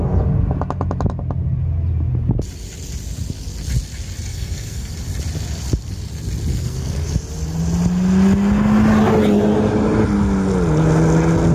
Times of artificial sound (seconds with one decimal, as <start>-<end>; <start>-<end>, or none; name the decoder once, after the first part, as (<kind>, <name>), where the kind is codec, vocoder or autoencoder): 4.3-4.9 (codec, SNAC); 6.5-7.1